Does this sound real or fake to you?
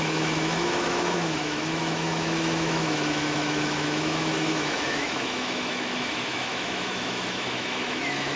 fake